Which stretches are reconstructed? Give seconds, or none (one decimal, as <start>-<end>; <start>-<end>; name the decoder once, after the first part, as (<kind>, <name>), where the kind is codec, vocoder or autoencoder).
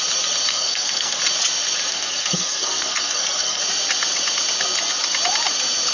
0.5-1.2 (codec, SNAC); 1.9-3.6